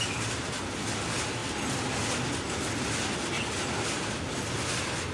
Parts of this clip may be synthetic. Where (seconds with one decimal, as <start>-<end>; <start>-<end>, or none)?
none